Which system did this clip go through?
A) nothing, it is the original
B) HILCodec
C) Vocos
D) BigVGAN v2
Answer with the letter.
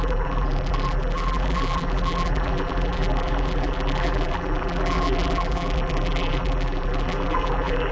D